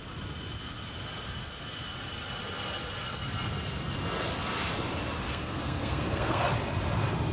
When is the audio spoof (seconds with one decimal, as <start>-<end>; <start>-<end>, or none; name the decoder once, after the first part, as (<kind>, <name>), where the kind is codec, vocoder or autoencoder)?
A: 5.3-6.5 (codec, SNAC)